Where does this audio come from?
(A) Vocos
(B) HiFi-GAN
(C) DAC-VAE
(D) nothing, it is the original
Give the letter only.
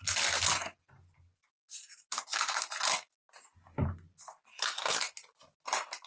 D